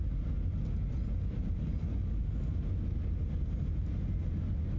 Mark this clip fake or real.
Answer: real